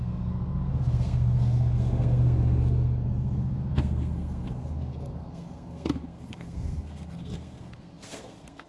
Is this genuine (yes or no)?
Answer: no